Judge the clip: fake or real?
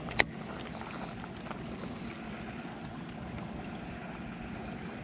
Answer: real